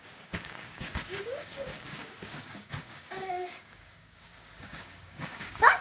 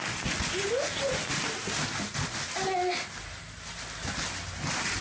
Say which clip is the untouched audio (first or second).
second